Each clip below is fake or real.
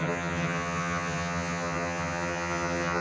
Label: fake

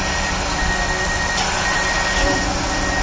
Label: real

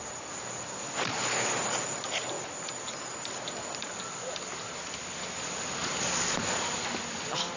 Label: real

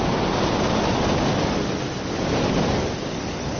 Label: real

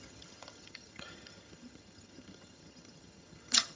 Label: fake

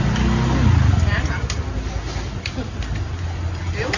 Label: real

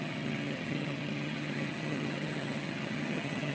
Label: fake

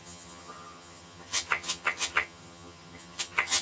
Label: fake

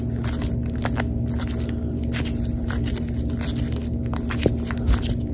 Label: real